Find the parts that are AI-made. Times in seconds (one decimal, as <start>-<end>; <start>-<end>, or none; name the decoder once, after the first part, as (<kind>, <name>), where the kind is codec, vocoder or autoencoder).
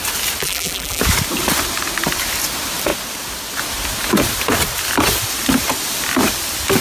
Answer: 0.4-1.0 (vocoder, BigVGAN v2)